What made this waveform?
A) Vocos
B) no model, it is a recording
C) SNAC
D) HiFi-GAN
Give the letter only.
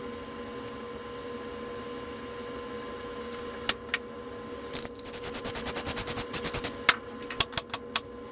B